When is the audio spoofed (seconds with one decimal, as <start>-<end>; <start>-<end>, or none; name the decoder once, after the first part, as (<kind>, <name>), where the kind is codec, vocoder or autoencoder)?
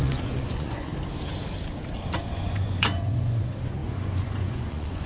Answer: 0.0-0.9 (vocoder, Vocos); 2.2-5.1